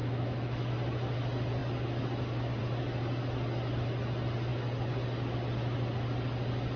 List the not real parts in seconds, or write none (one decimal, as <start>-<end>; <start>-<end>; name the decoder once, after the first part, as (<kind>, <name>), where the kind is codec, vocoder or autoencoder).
0.0-0.7 (autoencoder, DAC-VAE)